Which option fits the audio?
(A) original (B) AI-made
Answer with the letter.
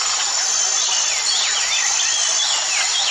A